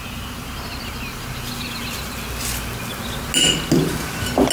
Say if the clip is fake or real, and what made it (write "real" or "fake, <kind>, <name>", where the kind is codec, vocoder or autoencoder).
real